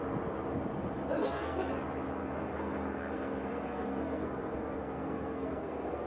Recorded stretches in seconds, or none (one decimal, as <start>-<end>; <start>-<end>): 0.0-1.2; 1.7-2.2